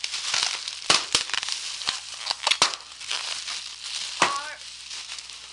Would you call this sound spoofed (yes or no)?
no